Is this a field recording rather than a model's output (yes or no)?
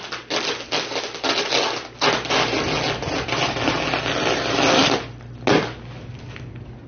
yes